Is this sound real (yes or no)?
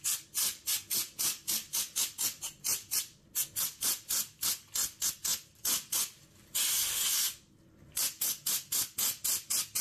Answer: yes